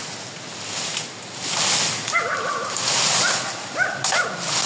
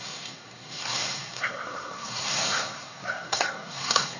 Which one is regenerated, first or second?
second